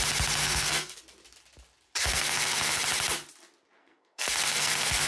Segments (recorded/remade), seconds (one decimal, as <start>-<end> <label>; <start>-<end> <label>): 0.0-0.4 recorded; 0.4-1.0 remade; 1.0-2.0 recorded; 2.0-2.8 remade; 2.8-3.8 recorded; 3.8-5.1 remade